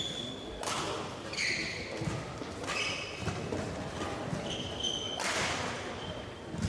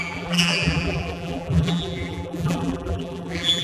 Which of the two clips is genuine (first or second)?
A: first